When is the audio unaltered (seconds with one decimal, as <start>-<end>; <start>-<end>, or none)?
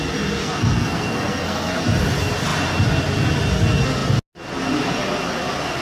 0.0-0.4; 1.8-5.8